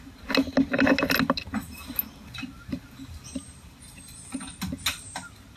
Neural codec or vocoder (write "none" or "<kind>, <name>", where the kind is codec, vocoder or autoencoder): none